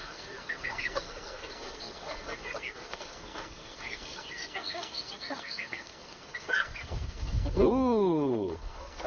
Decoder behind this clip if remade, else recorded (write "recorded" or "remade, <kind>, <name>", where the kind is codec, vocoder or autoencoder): remade, codec, SNAC